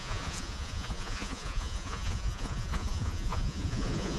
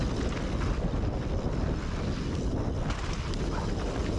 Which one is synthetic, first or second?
first